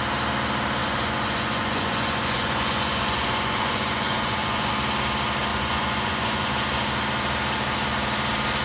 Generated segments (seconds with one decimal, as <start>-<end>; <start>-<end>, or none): 0.8-4.7; 5.5-6.5